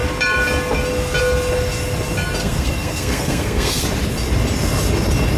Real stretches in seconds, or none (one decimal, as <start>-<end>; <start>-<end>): 0.0-2.4; 3.8-5.4